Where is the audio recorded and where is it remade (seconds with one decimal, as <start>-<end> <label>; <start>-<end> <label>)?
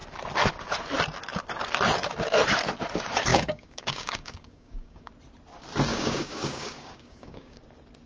0.0-3.3 recorded; 3.3-5.1 remade; 5.1-5.9 recorded; 5.9-7.6 remade; 7.6-8.1 recorded